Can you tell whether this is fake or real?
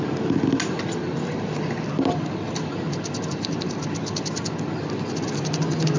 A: real